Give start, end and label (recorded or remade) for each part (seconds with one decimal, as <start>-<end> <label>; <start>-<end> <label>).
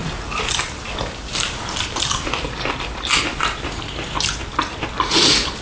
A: 0.0-3.4 remade; 3.4-5.6 recorded